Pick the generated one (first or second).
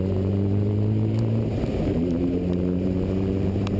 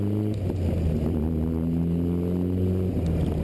first